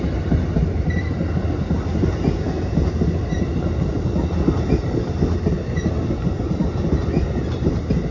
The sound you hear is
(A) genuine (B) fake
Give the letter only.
A